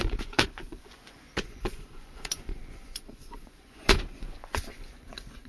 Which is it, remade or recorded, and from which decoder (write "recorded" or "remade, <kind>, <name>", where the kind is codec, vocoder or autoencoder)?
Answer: remade, vocoder, Vocos